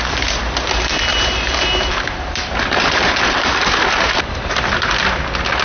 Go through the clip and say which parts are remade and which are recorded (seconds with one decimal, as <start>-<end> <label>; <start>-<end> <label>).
0.0-1.1 recorded; 1.1-4.5 remade; 4.5-5.6 recorded